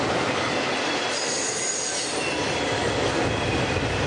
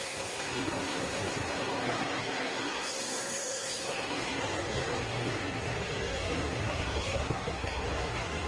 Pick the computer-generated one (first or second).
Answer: second